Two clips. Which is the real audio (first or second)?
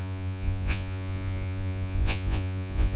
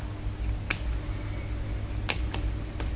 second